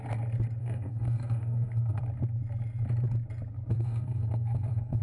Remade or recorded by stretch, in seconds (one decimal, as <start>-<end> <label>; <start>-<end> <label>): 0.0-0.6 recorded; 0.6-2.0 remade; 2.0-3.7 recorded; 3.7-5.0 remade